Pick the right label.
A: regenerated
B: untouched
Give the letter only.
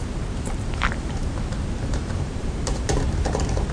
A